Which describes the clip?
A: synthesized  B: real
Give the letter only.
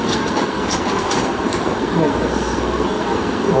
A